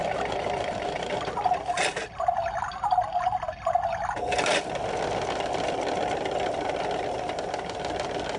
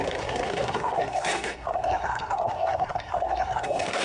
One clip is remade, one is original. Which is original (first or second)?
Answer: first